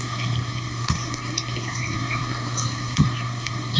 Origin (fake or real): fake